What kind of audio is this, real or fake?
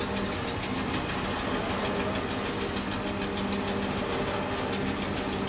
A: real